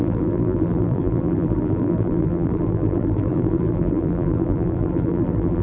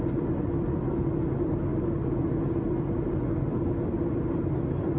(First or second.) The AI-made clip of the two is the first